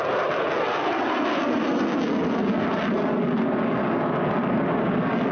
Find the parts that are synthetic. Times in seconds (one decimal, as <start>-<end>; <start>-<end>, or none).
none